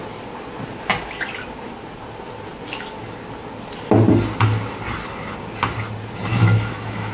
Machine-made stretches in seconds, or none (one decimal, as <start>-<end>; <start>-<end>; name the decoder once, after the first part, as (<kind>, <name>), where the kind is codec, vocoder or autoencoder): 6.3-7.1 (autoencoder, DAC-VAE)